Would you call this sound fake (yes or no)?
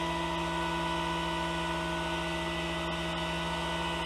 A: no